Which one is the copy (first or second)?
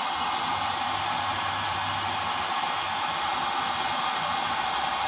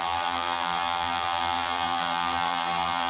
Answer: second